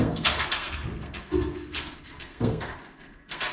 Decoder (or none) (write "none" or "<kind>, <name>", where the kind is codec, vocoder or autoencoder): codec, SNAC